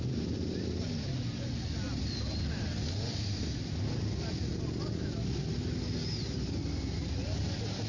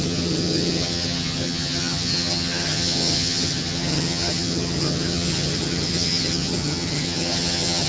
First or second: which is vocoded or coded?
second